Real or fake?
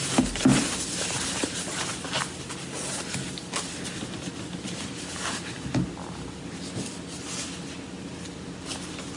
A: real